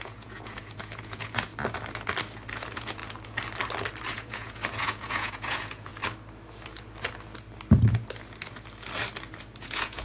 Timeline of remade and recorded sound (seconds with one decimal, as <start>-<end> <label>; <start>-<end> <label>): 0.0-1.5 remade; 1.5-2.5 recorded; 2.5-3.0 remade; 3.0-4.1 recorded; 4.1-5.9 remade; 5.9-9.6 recorded; 9.6-10.0 remade